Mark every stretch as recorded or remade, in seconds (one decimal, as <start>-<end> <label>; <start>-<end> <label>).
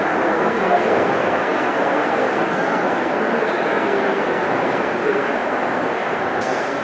0.0-6.8 remade